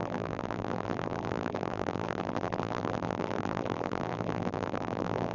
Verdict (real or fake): fake